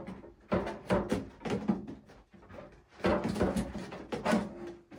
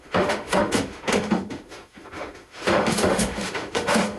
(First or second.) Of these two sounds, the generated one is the second